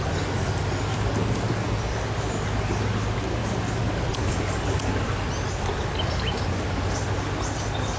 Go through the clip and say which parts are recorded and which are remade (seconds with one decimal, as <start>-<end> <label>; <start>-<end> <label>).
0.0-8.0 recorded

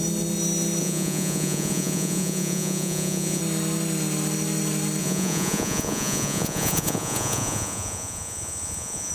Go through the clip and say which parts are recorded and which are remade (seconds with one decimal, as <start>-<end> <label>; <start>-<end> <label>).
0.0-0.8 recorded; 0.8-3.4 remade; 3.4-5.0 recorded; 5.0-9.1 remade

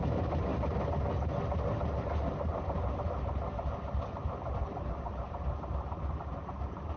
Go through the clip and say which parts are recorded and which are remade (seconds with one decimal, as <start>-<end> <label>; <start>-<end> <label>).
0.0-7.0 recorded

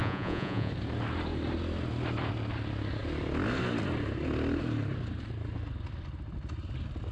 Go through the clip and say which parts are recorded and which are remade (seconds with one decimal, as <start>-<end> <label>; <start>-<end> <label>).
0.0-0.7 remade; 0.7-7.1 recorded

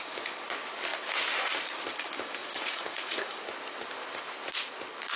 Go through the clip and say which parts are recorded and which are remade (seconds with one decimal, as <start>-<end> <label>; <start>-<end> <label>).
0.0-2.4 recorded; 2.4-3.4 remade; 3.4-5.2 recorded

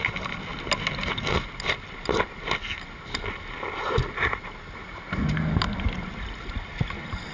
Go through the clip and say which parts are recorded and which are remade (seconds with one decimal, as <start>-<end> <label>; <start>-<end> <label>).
0.0-7.3 recorded

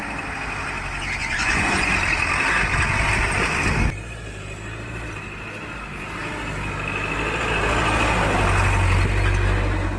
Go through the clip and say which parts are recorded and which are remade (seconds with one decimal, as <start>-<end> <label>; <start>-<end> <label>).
0.0-1.2 recorded; 1.2-1.9 remade; 1.9-10.0 recorded